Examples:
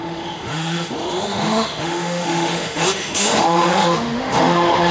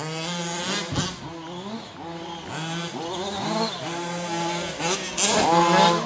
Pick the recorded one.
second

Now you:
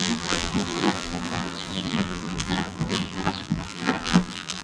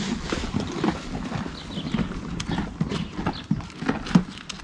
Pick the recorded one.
second